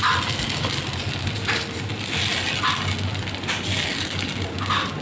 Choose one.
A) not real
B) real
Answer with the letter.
B